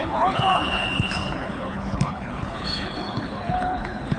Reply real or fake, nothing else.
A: fake